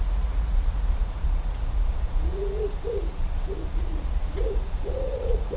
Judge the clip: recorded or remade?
remade